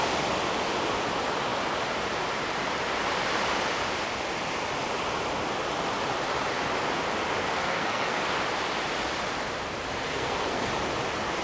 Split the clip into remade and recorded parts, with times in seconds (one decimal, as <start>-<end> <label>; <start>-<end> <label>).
0.0-7.4 recorded; 7.4-8.2 remade; 8.2-10.1 recorded; 10.1-10.7 remade; 10.7-11.4 recorded